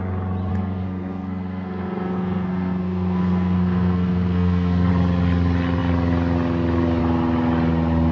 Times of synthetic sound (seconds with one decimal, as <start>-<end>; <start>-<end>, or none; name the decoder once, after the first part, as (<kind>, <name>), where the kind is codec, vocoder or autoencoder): 0.5-4.9 (codec, SNAC)